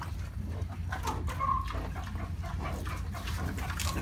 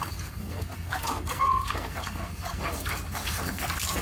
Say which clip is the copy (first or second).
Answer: second